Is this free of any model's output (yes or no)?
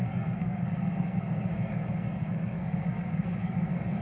no